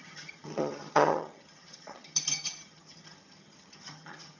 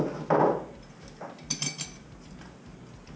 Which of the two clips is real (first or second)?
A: second